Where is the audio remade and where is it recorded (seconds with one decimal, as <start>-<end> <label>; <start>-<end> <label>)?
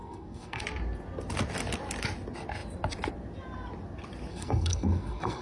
0.0-0.6 remade; 0.6-4.3 recorded; 4.3-5.4 remade